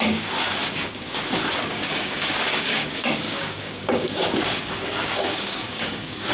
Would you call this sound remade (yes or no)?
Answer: yes